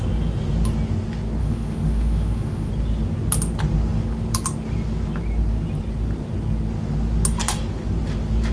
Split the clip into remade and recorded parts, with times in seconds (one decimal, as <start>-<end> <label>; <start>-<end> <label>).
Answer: 0.0-1.4 recorded; 1.4-2.7 remade; 2.7-8.5 recorded